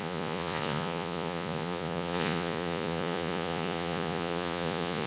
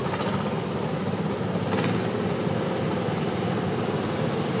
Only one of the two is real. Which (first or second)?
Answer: second